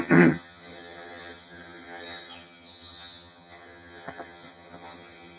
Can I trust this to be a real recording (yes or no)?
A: no